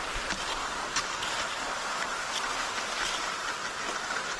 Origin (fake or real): real